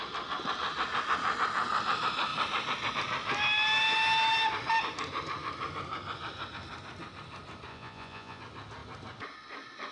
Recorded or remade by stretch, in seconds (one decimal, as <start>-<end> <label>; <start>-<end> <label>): 0.0-7.7 recorded; 7.7-8.4 remade; 8.4-9.9 recorded